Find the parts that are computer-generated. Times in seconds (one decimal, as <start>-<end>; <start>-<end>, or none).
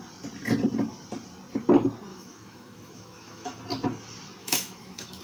2.1-3.6; 4.4-5.2